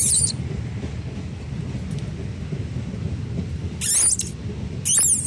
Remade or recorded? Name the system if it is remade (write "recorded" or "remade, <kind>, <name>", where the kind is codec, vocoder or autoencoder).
recorded